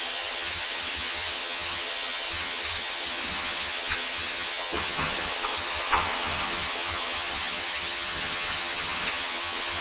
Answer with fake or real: fake